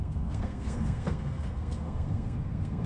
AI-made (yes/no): yes